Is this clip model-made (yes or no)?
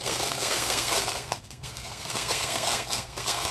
yes